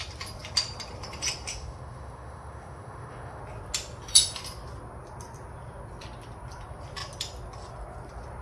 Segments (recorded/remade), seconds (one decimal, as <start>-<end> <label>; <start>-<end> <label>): 0.0-1.5 recorded; 1.5-3.4 remade; 3.4-8.4 recorded